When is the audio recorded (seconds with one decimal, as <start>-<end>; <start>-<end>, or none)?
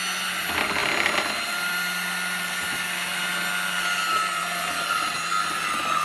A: 0.0-6.0